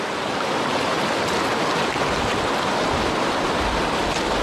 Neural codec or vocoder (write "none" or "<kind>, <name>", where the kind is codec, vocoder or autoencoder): none